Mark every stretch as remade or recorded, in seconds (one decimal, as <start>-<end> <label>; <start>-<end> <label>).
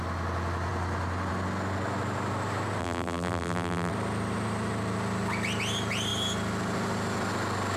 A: 0.0-2.8 recorded; 2.8-3.9 remade; 3.9-7.8 recorded